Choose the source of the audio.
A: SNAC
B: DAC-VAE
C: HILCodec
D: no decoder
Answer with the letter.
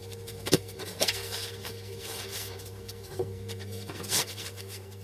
A